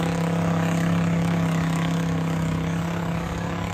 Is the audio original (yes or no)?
no